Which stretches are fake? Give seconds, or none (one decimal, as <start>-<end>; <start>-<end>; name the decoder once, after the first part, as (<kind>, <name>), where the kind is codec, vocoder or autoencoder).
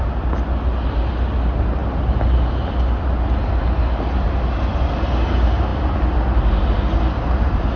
none